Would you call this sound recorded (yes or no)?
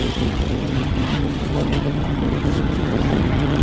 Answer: no